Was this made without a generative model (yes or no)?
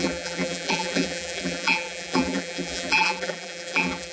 no